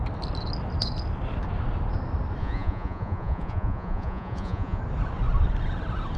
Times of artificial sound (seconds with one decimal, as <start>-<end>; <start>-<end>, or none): 2.4-4.8